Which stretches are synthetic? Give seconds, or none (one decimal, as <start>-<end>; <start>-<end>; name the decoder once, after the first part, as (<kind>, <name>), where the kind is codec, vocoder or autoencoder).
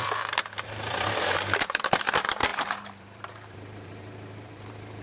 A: 0.0-5.0 (vocoder, BigVGAN v2)